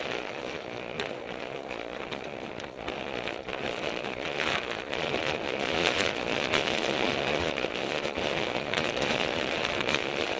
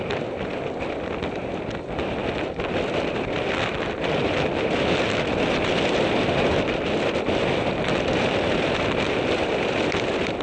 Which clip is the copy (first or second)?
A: first